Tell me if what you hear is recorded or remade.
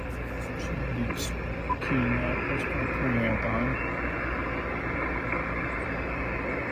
recorded